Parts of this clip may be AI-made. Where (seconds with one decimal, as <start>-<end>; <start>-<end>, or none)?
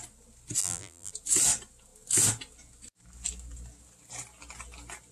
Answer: 0.6-1.1